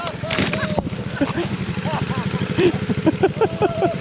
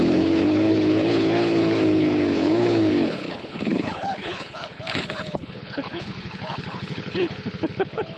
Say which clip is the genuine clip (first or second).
first